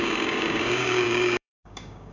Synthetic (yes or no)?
yes